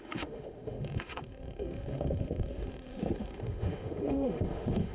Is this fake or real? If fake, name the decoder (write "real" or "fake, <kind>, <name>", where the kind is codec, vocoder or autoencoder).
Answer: fake, autoencoder, DAC-VAE